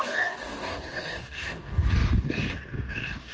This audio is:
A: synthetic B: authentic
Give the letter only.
A